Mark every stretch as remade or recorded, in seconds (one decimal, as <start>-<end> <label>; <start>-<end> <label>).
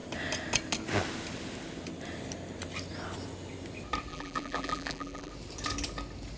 0.0-4.1 recorded; 4.1-5.3 remade; 5.3-6.4 recorded